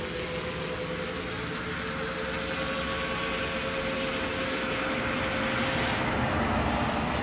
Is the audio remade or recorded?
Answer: recorded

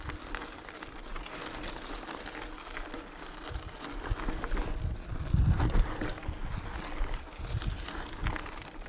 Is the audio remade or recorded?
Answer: recorded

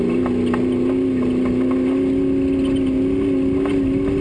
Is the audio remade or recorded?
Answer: recorded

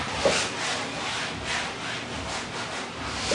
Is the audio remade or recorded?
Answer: recorded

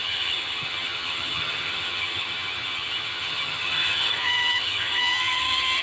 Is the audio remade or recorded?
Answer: remade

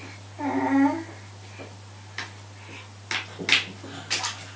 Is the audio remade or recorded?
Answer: recorded